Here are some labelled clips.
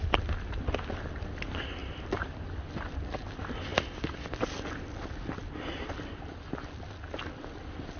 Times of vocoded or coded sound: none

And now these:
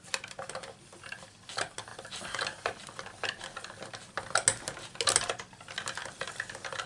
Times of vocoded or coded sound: none

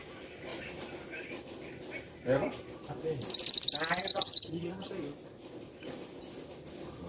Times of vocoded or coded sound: 4.1-4.9 (vocoder, HiFi-GAN)